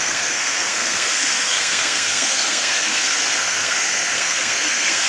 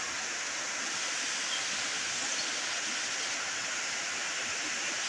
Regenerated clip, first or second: first